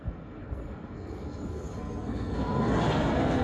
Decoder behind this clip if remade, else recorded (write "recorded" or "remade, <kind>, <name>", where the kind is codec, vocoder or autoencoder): remade, codec, SNAC